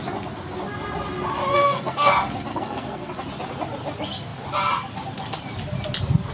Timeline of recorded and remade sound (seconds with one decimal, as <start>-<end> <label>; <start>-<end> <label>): 0.0-1.5 recorded; 1.5-2.1 remade; 2.1-2.5 recorded; 2.5-3.1 remade; 3.1-6.3 recorded

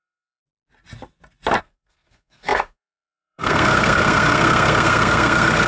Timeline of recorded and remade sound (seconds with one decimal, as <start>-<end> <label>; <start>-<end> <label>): 0.0-0.4 remade; 0.4-1.6 recorded; 1.6-5.7 remade

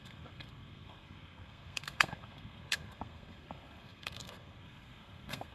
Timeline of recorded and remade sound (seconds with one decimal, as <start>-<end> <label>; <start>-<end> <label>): 0.0-5.5 remade